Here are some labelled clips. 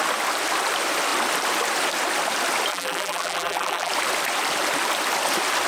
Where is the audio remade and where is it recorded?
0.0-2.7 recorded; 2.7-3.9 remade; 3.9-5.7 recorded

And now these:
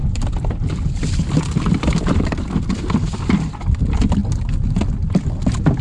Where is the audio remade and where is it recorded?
0.0-4.2 remade; 4.2-4.9 recorded; 4.9-5.8 remade

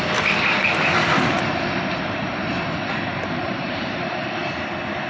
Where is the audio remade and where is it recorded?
0.0-0.6 recorded; 0.6-2.5 remade; 2.5-3.1 recorded; 3.1-4.4 remade; 4.4-5.1 recorded